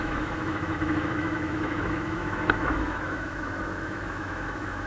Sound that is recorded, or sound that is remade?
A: remade